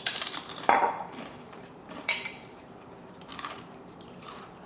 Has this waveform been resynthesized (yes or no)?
yes